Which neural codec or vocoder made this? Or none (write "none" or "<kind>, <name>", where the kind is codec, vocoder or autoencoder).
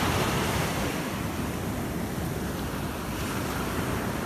none